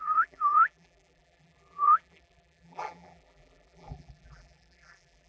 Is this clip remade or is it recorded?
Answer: remade